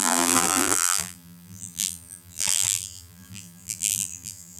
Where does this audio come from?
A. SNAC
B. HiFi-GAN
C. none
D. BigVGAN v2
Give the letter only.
D